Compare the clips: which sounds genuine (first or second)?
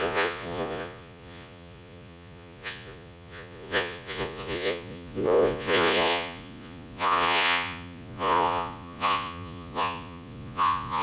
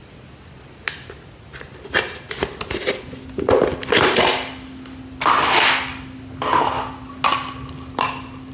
second